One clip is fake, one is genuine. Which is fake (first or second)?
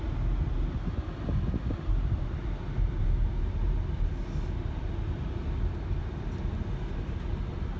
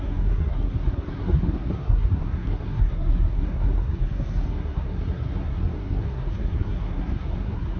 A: second